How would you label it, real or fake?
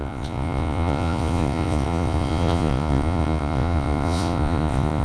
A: fake